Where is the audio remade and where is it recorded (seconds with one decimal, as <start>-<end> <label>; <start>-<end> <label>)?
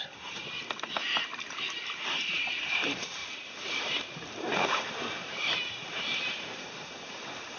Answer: 0.0-7.6 remade